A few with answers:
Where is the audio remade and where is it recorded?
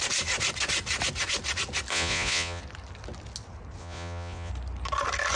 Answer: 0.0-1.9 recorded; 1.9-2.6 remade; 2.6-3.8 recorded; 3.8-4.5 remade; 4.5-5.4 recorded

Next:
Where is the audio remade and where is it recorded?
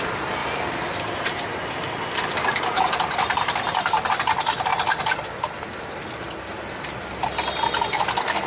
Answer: 0.0-0.4 recorded; 0.4-4.1 remade; 4.1-8.5 recorded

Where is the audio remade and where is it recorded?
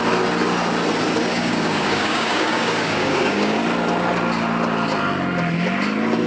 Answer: 0.0-1.3 recorded; 1.3-3.6 remade; 3.6-6.3 recorded